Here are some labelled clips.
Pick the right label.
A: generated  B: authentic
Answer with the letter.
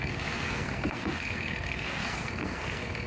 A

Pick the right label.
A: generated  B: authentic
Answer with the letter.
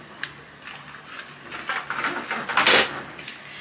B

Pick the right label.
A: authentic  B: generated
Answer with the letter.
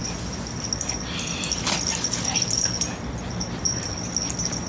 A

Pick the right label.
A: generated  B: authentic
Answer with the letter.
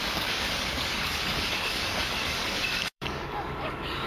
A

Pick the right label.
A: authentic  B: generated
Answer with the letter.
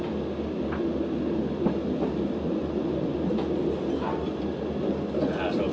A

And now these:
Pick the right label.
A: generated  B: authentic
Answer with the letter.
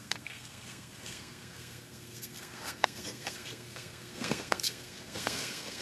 A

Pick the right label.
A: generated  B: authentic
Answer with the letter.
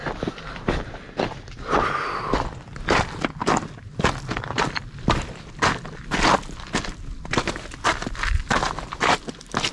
B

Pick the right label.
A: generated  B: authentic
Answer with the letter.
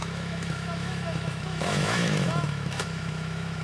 A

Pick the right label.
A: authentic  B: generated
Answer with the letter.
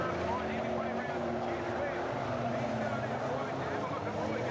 A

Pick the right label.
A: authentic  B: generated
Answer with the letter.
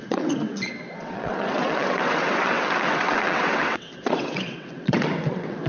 B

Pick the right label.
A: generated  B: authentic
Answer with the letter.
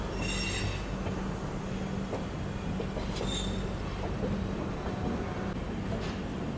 B